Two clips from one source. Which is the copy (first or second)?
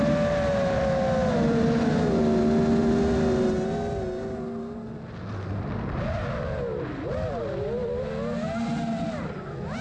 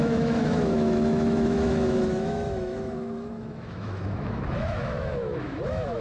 second